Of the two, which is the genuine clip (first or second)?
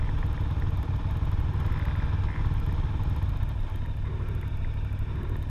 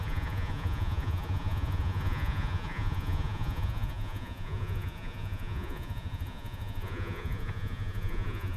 first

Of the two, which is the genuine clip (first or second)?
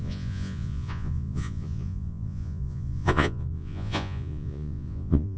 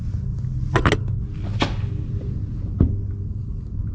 second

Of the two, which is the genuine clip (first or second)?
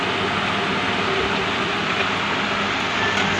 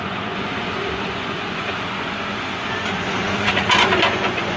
first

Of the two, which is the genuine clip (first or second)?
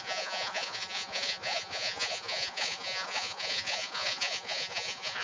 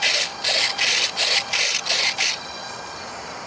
second